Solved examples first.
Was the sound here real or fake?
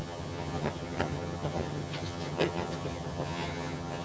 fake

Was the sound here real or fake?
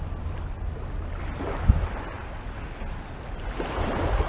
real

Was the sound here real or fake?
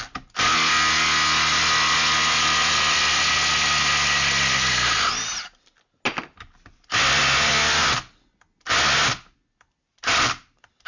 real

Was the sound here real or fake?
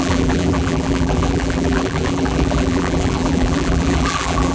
fake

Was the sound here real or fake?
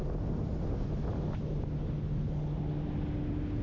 real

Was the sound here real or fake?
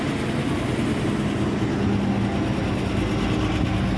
real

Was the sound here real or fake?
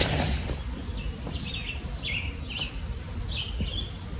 real